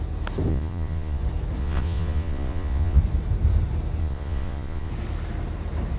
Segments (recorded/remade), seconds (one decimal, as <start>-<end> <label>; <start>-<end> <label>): 0.0-0.5 recorded; 0.5-1.2 remade; 1.2-1.6 recorded; 1.6-3.0 remade; 3.0-4.0 recorded; 4.0-4.9 remade; 4.9-6.0 recorded